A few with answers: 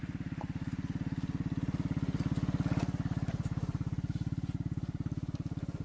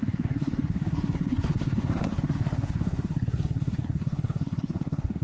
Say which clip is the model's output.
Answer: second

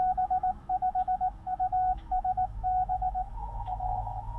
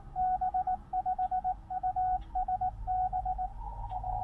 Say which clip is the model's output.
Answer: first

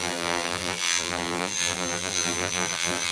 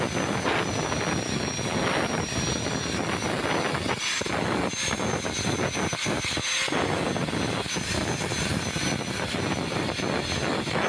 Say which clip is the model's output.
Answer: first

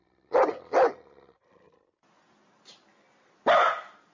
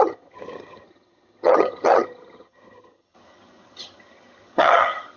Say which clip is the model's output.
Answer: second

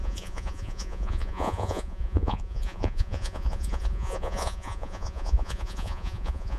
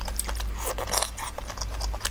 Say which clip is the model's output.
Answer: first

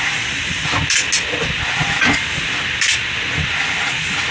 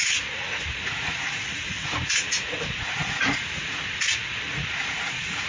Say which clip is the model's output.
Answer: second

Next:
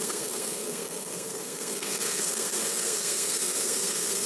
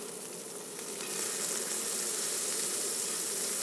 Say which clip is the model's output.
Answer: first